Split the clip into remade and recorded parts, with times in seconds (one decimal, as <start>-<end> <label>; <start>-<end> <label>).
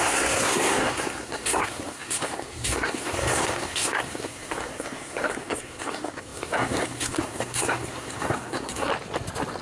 0.0-8.9 remade; 8.9-9.6 recorded